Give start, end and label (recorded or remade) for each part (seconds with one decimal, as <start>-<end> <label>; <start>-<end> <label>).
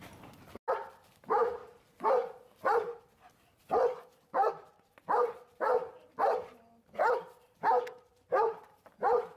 0.0-9.4 recorded